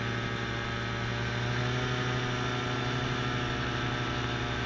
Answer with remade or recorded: recorded